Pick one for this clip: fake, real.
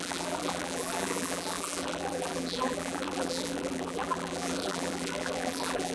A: fake